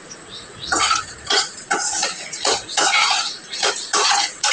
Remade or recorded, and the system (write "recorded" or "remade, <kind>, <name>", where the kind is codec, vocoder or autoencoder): remade, vocoder, Vocos